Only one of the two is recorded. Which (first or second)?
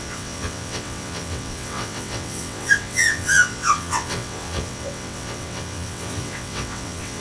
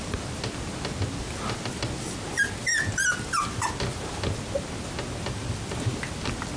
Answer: second